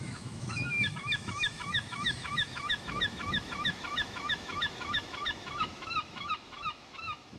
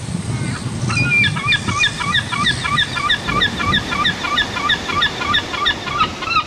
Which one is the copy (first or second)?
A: first